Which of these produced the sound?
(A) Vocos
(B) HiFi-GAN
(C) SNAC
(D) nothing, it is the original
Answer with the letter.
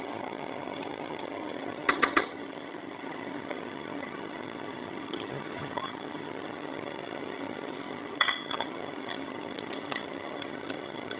B